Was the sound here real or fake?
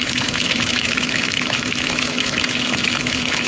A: fake